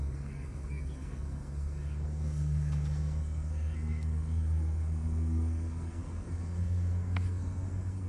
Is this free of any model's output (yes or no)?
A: no